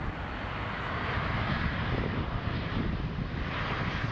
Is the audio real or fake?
real